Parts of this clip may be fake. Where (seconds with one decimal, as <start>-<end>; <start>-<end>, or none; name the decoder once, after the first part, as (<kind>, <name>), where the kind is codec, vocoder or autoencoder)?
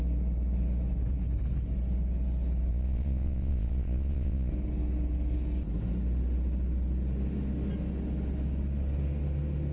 2.7-4.5 (vocoder, Vocos)